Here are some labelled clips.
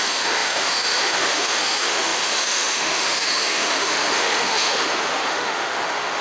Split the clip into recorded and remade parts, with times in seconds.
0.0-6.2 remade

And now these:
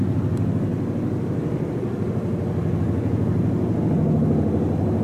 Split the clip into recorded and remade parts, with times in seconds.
0.0-5.0 recorded

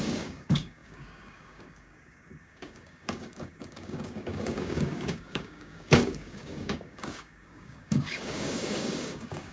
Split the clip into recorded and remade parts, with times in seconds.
0.0-9.5 remade